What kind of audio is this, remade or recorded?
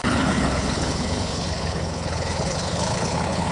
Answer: remade